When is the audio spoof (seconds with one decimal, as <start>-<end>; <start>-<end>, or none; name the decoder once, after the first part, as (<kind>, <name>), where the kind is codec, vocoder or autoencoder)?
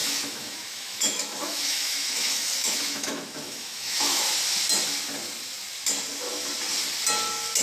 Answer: 0.0-4.2 (autoencoder, DAC-VAE)